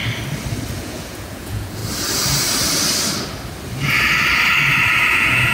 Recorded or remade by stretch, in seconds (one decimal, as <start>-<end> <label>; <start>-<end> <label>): 0.0-0.8 recorded; 0.8-1.8 remade; 1.8-5.1 recorded; 5.1-5.5 remade